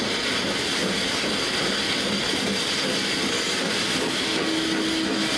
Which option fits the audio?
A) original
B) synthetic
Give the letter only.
A